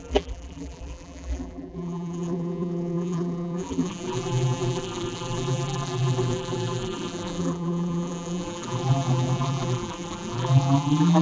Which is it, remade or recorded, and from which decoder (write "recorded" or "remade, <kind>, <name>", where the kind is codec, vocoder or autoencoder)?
remade, vocoder, BigVGAN v2